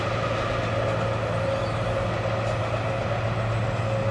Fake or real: real